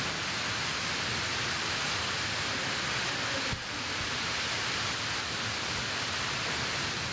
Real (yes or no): yes